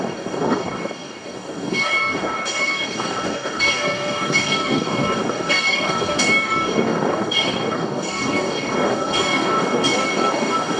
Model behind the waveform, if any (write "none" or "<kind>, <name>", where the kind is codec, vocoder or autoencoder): codec, DAC